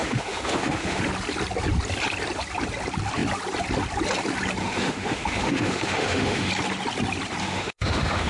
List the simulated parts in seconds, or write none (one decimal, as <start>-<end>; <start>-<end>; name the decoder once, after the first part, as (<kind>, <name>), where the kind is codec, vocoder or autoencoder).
0.0-1.0 (autoencoder, DAC-VAE); 4.6-6.5; 7.4-8.3